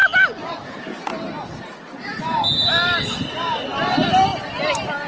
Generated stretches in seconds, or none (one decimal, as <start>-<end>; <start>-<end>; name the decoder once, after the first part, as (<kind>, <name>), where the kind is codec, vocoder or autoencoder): none